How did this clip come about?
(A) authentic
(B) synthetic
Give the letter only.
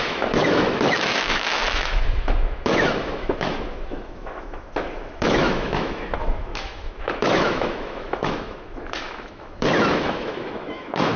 B